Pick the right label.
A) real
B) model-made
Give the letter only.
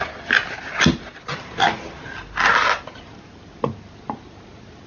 A